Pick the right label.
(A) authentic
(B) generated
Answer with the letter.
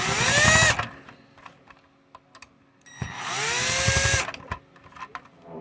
A